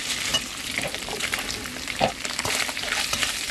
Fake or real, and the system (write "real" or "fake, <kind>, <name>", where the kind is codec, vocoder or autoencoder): fake, vocoder, BigVGAN v2